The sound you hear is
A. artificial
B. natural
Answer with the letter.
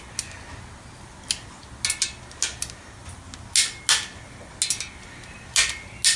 B